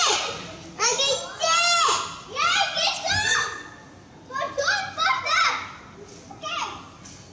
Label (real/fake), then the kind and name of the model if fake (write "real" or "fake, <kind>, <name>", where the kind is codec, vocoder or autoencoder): real